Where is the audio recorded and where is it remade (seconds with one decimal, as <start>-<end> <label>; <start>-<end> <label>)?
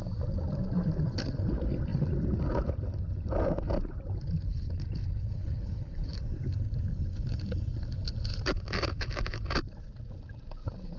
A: 0.0-4.5 recorded; 4.5-6.2 remade; 6.2-11.0 recorded